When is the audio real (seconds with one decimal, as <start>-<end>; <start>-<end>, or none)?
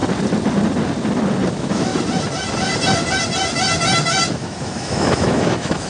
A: 0.0-1.5; 1.9-4.3